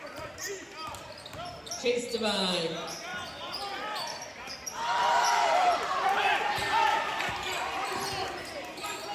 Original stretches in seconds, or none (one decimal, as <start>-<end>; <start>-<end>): 0.0-1.5; 2.0-3.1; 7.3-9.1